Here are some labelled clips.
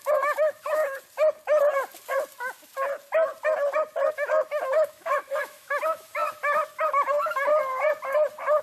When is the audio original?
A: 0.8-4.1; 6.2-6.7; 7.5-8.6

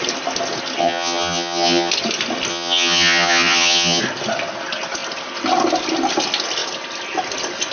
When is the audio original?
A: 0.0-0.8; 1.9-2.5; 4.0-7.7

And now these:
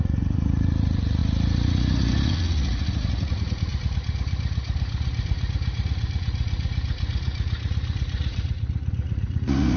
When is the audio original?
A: none

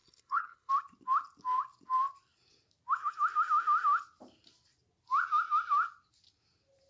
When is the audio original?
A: 0.7-6.9

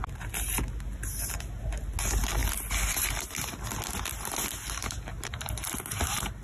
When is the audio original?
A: 0.0-6.4